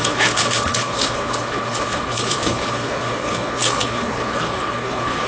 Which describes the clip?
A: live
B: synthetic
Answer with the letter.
B